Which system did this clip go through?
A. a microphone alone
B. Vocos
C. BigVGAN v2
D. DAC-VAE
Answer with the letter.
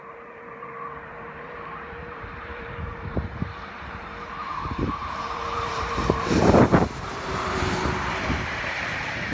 C